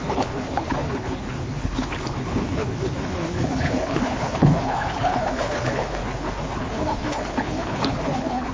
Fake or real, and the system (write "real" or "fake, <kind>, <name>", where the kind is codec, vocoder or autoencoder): fake, codec, HILCodec